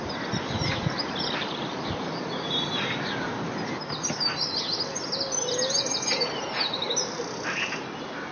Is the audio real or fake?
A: real